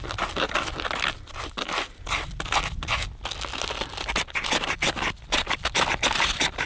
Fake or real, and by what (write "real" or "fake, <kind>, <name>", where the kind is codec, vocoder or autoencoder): real